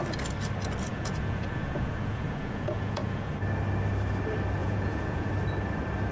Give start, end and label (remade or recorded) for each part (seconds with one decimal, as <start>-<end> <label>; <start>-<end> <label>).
0.0-0.9 recorded; 0.9-3.3 remade; 3.3-4.6 recorded; 4.6-5.3 remade; 5.3-6.1 recorded